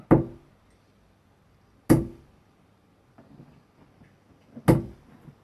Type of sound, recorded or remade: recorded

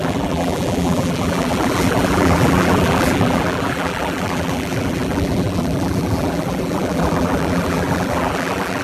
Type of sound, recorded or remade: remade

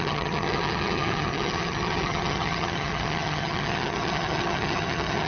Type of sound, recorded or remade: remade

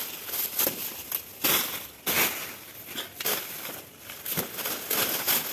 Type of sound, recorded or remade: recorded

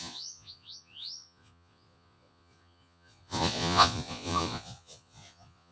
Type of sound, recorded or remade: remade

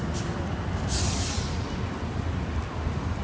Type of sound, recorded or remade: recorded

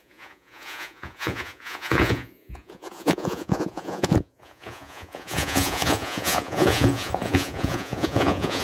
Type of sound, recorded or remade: remade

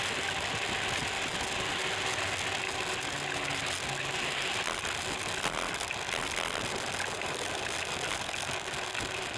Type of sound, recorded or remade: recorded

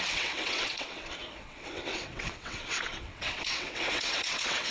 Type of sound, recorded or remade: remade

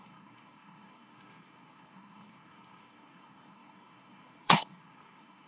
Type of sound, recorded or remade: remade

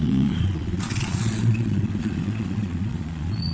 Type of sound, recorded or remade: remade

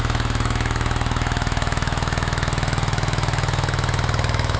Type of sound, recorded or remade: remade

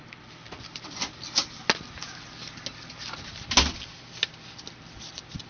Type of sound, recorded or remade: recorded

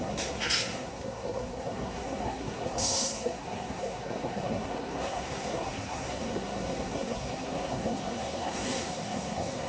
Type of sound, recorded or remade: remade